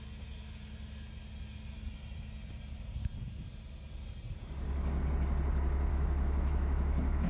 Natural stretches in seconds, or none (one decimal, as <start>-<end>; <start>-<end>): 0.0-5.9